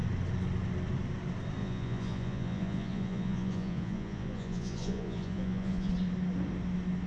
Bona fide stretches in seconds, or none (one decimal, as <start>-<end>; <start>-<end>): 0.0-1.6; 5.9-7.1